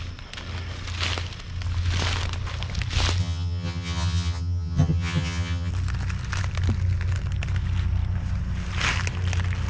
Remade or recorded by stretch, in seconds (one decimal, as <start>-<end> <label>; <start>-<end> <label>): 0.0-3.2 recorded; 3.2-5.7 remade; 5.7-9.7 recorded